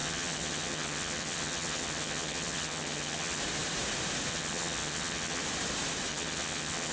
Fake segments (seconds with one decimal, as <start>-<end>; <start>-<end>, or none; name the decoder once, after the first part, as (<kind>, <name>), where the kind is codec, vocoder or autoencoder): 0.0-3.4 (vocoder, HiFi-GAN); 4.3-5.4; 6.1-6.9

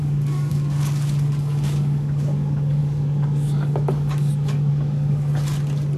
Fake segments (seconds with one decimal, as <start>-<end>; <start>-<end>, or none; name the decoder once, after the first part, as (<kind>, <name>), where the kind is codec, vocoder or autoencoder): 0.0-5.3 (codec, DAC)